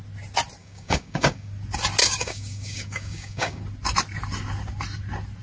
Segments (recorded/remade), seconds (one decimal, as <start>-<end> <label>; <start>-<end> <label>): 0.0-0.6 recorded; 0.6-1.5 remade; 1.5-2.0 recorded; 2.0-3.6 remade; 3.6-5.4 recorded